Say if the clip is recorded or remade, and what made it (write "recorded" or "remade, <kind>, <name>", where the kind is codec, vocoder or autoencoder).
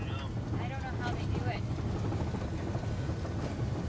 recorded